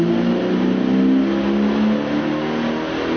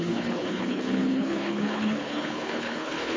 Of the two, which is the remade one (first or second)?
second